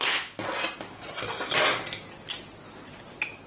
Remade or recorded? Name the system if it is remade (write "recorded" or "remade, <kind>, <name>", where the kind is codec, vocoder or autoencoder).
recorded